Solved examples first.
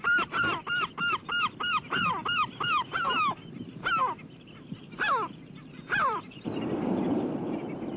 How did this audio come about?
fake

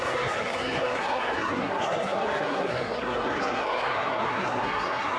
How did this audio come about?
fake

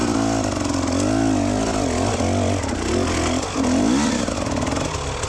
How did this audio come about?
real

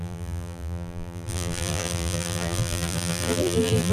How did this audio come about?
fake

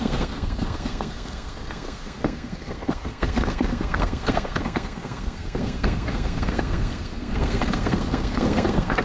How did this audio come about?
fake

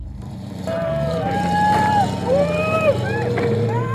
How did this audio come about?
fake